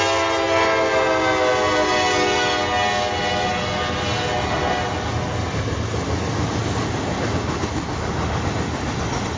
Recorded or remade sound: recorded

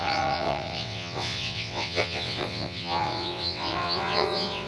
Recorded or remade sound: remade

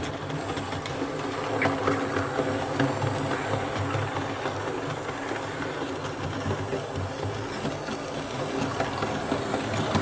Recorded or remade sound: recorded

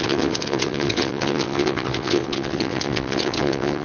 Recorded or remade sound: remade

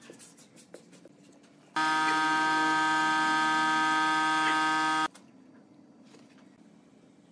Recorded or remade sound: recorded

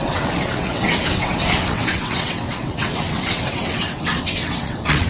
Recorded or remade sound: remade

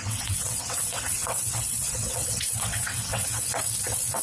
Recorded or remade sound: remade